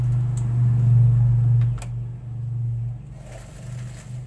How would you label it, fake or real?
real